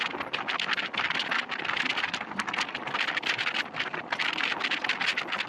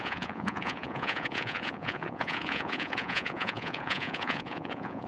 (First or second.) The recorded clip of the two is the first